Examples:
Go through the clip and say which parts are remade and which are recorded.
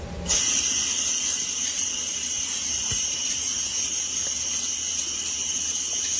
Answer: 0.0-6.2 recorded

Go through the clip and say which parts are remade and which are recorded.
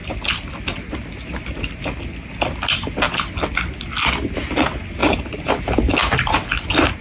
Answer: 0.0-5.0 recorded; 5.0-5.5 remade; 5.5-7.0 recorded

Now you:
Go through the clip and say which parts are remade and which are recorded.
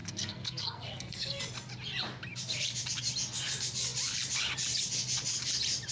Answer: 0.0-1.4 remade; 1.4-5.9 recorded